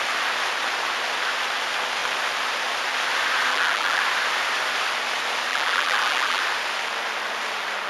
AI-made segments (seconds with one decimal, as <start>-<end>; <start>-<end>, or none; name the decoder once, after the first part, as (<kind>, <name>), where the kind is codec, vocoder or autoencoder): 3.5-4.0 (vocoder, BigVGAN v2); 5.5-6.4